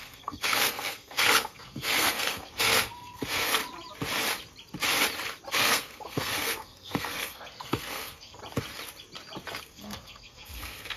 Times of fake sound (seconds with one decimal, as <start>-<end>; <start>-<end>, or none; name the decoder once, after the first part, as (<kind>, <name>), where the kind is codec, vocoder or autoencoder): 0.0-3.6 (codec, SNAC); 5.5-8.4; 9.6-11.0

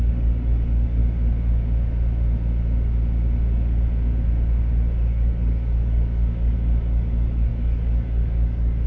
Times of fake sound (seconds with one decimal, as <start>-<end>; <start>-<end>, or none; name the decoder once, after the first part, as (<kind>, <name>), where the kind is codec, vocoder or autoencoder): 0.0-1.0 (codec, DAC); 5.1-8.9

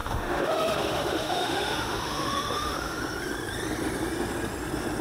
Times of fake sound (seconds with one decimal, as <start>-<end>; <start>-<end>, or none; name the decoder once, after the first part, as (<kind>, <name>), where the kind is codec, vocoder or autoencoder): 0.0-3.0 (autoencoder, DAC-VAE)